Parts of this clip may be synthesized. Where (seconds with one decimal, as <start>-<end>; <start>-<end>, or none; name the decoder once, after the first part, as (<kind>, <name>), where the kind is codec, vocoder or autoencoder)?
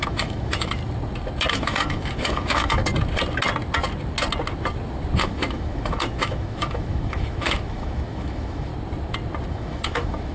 0.0-0.8 (autoencoder, DAC-VAE); 1.5-2.8; 5.2-8.7; 9.5-10.3